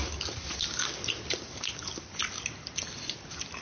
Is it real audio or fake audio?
real